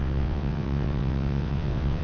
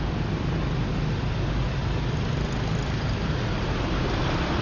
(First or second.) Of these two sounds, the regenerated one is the first